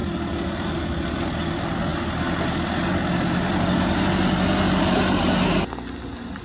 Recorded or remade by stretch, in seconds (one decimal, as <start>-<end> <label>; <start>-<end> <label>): 0.0-6.4 recorded